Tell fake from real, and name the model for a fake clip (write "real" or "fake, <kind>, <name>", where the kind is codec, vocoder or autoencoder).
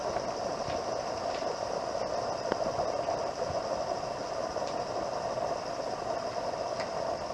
real